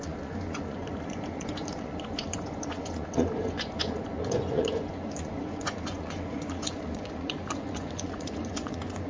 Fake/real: fake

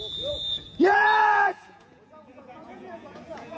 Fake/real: fake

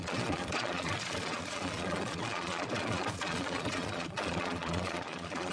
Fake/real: fake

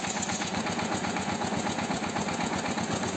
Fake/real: fake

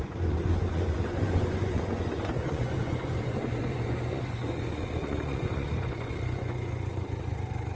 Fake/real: fake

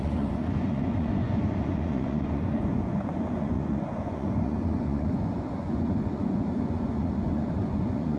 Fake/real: fake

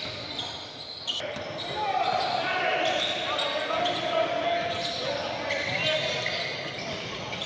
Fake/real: real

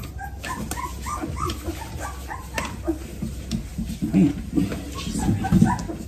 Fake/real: real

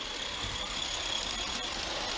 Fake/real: real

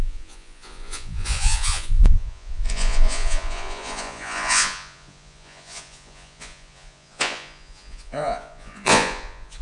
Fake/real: fake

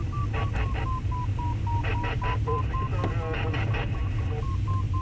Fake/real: real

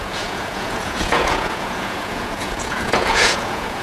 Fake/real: fake